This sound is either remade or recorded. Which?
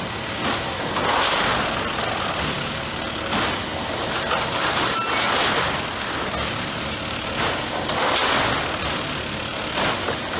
recorded